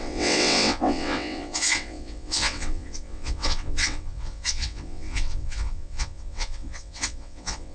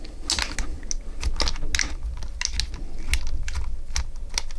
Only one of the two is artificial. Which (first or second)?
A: first